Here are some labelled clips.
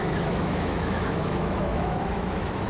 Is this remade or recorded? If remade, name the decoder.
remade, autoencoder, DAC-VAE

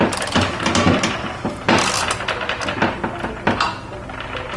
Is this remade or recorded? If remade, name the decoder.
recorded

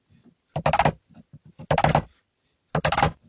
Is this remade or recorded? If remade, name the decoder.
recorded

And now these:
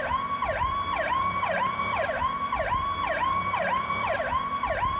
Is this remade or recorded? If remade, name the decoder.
recorded